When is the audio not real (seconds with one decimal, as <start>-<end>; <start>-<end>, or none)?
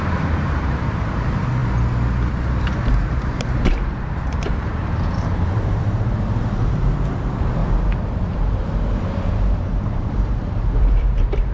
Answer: 0.0-1.6; 2.3-7.6; 9.2-11.5